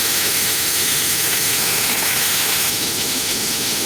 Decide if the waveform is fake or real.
fake